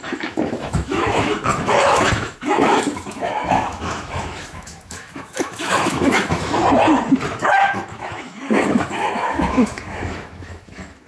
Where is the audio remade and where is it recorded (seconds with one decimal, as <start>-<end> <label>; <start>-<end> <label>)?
0.0-6.6 remade; 6.6-7.3 recorded; 7.3-11.1 remade